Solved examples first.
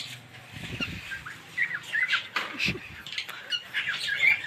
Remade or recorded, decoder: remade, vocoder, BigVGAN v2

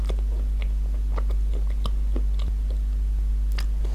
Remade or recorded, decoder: recorded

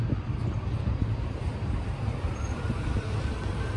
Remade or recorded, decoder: recorded